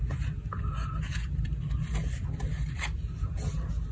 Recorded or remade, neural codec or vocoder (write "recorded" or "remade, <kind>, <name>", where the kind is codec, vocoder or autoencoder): recorded